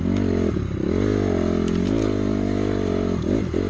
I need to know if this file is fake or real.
real